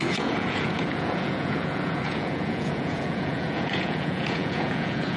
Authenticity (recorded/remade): remade